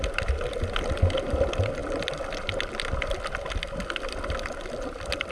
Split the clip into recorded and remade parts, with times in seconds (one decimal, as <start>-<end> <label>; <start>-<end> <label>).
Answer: 0.0-5.3 recorded